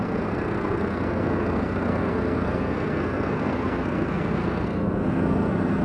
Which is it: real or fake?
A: fake